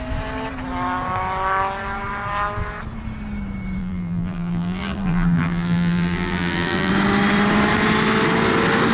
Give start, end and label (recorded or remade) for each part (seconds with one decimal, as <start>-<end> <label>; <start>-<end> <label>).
0.0-3.8 recorded; 3.8-6.9 remade; 6.9-8.9 recorded

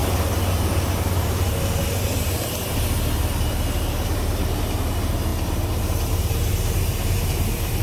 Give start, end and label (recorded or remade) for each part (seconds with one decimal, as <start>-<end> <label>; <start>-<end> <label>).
0.0-3.2 recorded; 3.2-5.3 remade; 5.3-5.8 recorded; 5.8-7.8 remade